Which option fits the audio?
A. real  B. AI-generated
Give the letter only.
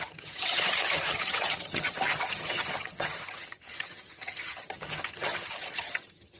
B